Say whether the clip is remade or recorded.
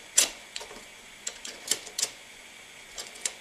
remade